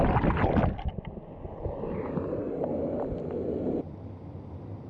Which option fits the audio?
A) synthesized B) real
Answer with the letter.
B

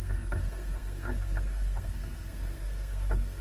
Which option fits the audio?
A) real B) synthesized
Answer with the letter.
B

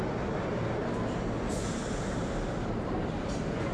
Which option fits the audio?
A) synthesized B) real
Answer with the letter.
B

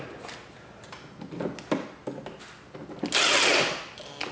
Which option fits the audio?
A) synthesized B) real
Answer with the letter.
B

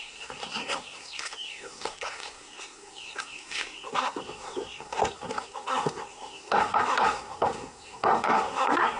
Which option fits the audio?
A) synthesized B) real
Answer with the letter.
A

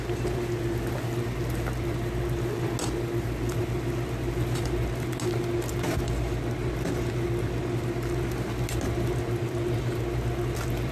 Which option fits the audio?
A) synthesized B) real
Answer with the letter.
B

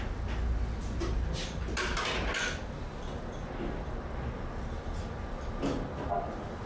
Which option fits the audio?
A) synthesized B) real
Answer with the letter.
B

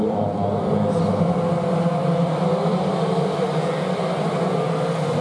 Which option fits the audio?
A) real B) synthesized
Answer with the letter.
A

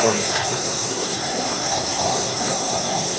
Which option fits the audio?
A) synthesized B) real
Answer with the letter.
A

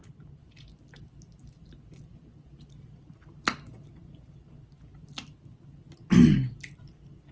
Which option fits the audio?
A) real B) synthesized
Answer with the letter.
A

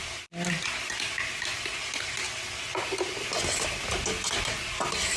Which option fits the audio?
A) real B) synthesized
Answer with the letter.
A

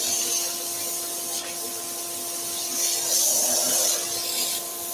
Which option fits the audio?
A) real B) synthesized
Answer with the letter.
A